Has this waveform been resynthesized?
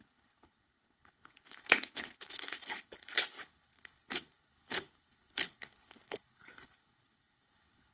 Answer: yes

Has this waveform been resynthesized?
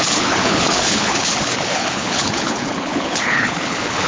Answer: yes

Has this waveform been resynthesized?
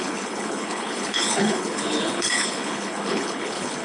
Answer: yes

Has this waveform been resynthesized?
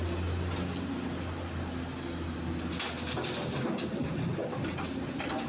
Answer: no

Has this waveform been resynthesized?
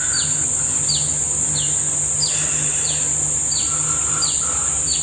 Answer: no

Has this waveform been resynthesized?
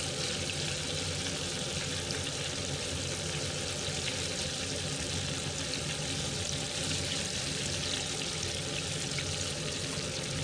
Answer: no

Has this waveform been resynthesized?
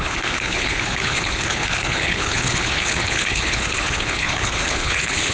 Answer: yes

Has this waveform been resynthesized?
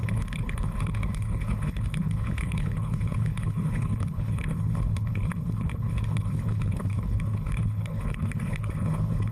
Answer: yes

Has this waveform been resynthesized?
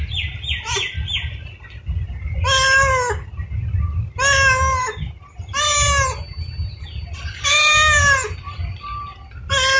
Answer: no